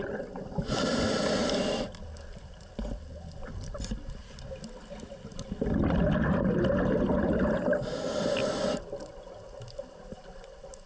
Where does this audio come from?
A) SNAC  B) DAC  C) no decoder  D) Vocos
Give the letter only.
C